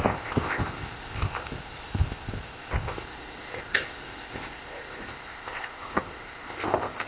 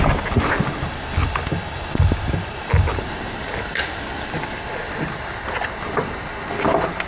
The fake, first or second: first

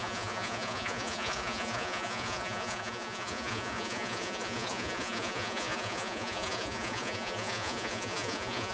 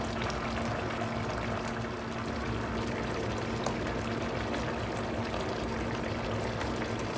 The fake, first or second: first